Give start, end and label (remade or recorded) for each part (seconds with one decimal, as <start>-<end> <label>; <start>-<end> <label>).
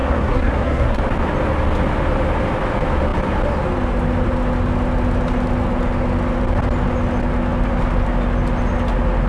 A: 0.0-1.0 remade; 1.0-9.3 recorded